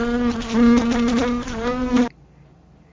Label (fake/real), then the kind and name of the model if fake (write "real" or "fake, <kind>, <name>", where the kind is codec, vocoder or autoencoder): real